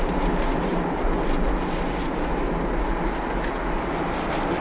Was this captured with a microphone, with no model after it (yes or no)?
yes